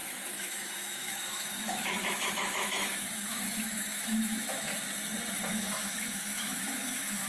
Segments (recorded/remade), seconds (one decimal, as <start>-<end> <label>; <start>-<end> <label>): 0.0-4.7 remade; 4.7-5.5 recorded; 5.5-7.3 remade